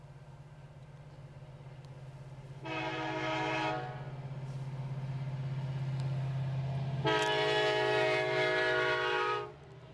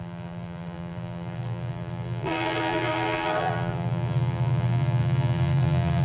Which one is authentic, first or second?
first